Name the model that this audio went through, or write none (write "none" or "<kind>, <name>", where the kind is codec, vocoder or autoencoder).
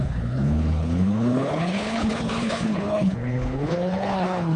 codec, HILCodec